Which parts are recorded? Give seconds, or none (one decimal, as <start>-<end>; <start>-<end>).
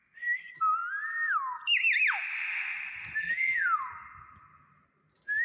0.0-3.2; 3.8-5.4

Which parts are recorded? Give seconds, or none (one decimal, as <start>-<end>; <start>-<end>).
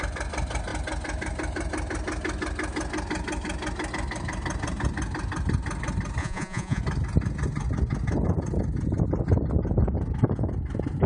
0.0-6.2; 6.8-11.1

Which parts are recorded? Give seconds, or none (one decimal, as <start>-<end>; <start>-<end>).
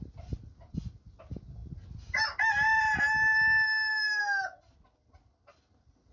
0.0-6.1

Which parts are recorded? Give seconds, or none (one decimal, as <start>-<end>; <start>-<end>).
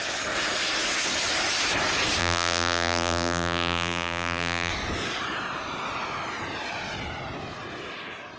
0.0-2.2; 4.7-8.4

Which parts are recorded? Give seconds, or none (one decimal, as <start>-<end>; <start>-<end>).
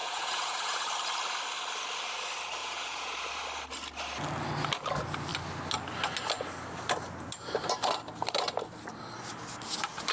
0.8-2.6; 3.3-10.1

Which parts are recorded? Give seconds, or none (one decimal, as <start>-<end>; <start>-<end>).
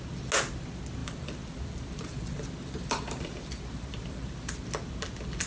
0.0-1.0; 4.3-5.5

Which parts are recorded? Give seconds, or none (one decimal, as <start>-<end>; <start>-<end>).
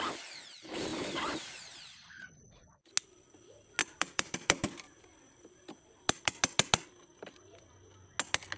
0.0-0.9; 2.4-3.8; 5.5-8.6